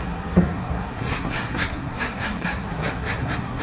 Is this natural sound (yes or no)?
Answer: no